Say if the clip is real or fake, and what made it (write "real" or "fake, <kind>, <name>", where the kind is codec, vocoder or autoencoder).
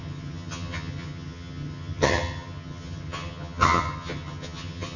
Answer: fake, vocoder, HiFi-GAN